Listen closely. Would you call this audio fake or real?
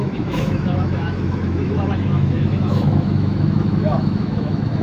fake